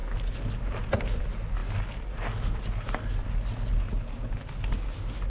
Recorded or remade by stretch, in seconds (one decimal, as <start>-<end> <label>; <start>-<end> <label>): 0.0-5.3 recorded